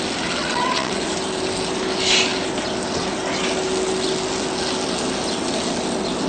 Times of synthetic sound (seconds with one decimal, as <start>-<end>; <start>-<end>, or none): 0.4-1.0